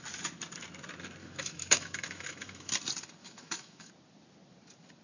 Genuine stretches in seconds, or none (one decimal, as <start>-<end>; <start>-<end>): 0.0-1.2; 2.7-3.2; 3.9-5.0